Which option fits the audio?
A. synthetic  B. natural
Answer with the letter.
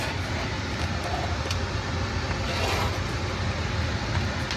B